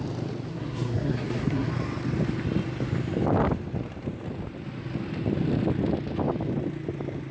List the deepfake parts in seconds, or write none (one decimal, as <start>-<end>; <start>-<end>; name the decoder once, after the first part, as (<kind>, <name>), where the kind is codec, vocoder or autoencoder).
0.5-1.7 (codec, SNAC)